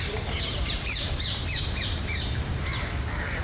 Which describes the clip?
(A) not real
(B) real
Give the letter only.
A